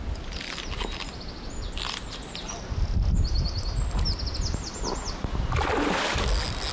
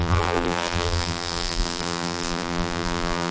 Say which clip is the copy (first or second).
second